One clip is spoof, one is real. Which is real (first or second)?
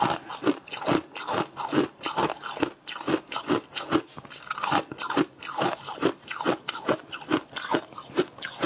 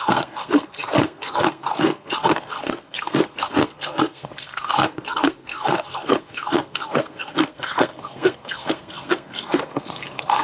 first